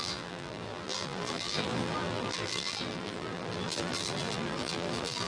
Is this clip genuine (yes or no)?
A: no